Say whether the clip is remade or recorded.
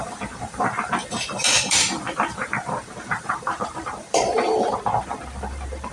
remade